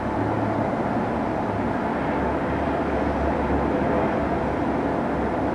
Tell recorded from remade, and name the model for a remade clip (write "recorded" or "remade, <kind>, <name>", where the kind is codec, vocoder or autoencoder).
recorded